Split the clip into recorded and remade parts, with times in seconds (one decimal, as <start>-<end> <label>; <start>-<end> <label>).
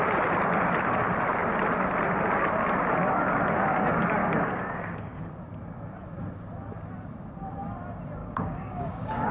0.0-4.2 recorded; 4.2-5.2 remade; 5.2-8.2 recorded; 8.2-9.3 remade